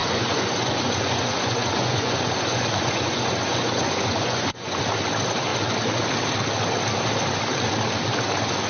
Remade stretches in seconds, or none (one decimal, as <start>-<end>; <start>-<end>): 0.0-4.8